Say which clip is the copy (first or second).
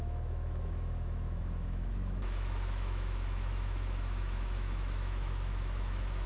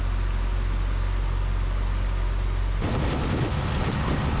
first